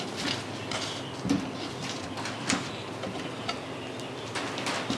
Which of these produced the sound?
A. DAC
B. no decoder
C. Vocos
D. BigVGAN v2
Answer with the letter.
B